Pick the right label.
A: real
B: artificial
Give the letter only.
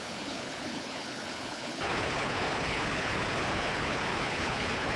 B